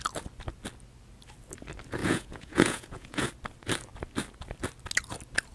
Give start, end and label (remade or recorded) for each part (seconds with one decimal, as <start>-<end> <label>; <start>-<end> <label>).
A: 0.0-2.0 recorded; 2.0-3.3 remade; 3.3-5.5 recorded